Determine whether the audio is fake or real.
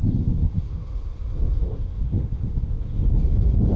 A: fake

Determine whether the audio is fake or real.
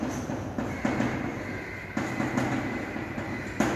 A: real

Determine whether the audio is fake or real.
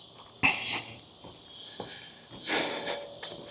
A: real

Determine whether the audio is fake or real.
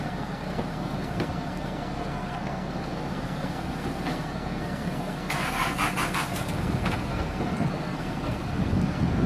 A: fake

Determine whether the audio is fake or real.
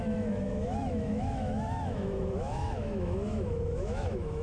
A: fake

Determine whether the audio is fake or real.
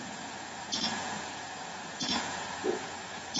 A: fake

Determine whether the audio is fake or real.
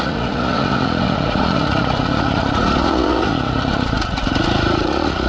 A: fake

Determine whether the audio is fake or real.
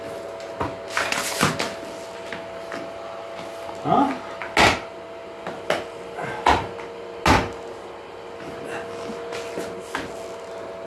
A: real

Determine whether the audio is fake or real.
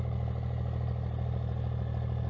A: real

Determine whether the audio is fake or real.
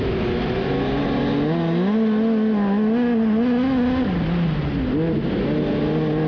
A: real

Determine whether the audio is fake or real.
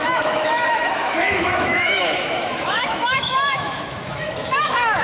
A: fake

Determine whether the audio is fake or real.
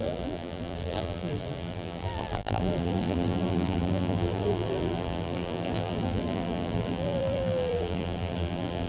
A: fake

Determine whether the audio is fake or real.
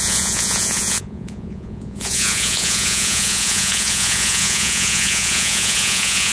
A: fake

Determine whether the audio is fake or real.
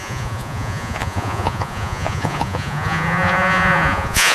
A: fake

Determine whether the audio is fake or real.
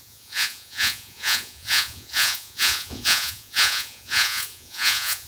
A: fake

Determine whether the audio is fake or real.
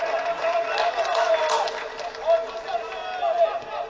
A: real